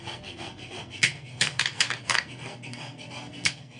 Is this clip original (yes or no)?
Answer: no